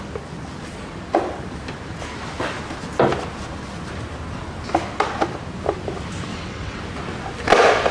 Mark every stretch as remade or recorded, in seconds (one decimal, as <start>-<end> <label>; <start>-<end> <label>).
0.0-6.3 recorded; 6.3-6.8 remade; 6.8-7.9 recorded